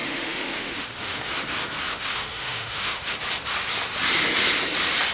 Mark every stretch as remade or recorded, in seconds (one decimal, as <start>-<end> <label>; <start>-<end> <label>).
0.0-1.3 remade; 1.3-1.9 recorded; 1.9-3.0 remade; 3.0-5.1 recorded